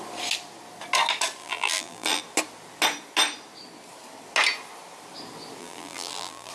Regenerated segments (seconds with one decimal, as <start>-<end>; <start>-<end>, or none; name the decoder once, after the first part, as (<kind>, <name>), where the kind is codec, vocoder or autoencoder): 1.4-2.2 (vocoder, BigVGAN v2); 5.6-6.5